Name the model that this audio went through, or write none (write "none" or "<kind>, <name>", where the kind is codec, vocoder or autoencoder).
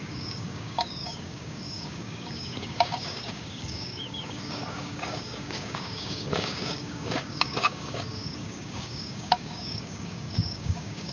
codec, DAC